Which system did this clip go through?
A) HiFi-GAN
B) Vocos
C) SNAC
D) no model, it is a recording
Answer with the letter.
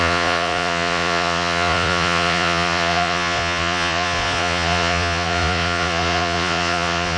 B